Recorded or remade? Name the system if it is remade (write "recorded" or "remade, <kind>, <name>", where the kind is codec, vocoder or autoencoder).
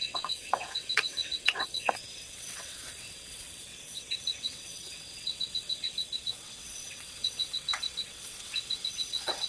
remade, vocoder, WaveNeXt